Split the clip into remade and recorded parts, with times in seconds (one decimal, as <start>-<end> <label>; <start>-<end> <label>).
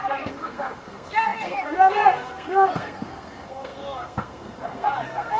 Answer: 0.0-5.4 remade